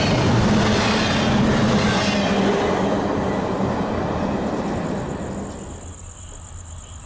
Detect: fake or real real